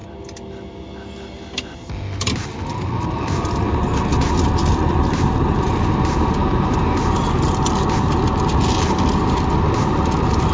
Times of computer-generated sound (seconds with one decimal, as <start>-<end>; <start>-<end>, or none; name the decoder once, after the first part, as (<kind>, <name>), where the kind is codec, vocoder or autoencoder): 4.1-5.2 (vocoder, BigVGAN v2)